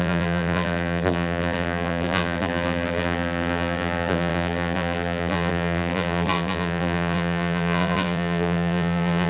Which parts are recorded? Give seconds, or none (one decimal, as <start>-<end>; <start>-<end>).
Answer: none